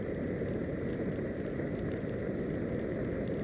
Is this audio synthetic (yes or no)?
no